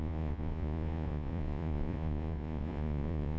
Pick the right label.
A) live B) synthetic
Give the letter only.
B